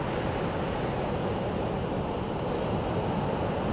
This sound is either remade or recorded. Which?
recorded